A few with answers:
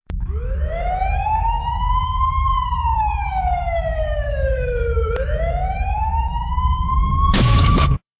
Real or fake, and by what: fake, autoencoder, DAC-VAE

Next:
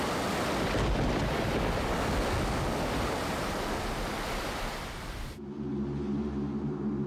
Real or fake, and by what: real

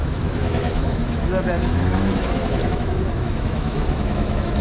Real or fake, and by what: fake, autoencoder, DAC-VAE